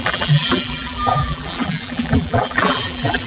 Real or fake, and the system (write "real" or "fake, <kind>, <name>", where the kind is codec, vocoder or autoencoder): fake, vocoder, BigVGAN v2